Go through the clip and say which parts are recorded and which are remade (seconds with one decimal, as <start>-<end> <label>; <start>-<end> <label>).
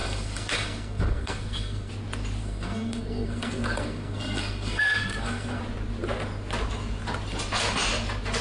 0.0-1.9 remade; 1.9-2.4 recorded; 2.4-5.6 remade; 5.6-8.4 recorded